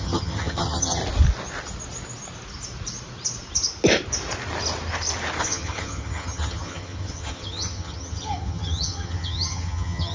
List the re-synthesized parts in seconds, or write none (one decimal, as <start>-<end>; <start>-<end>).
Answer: 0.0-1.0; 5.4-10.1